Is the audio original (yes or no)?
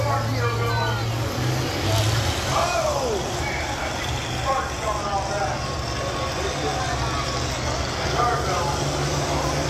yes